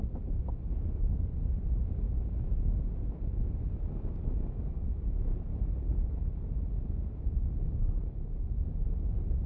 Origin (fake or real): real